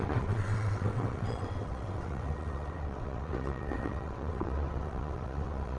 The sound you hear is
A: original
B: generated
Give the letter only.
B